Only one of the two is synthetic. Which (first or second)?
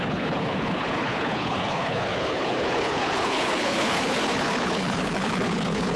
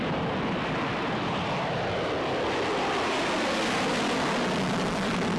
first